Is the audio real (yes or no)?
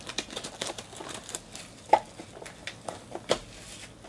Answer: yes